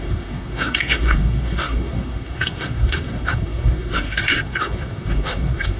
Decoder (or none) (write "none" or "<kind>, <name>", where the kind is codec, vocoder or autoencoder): codec, SNAC